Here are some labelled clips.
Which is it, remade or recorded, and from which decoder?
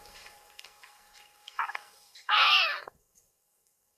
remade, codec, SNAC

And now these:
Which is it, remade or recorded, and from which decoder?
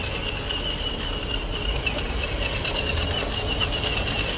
recorded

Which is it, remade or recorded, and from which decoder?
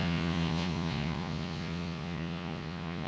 remade, vocoder, Vocos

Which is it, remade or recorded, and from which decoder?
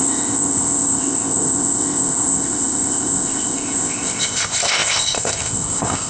remade, codec, ZipCodec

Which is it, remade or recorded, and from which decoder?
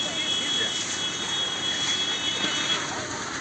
recorded